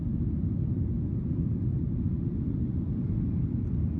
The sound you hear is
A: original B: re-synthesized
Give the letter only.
A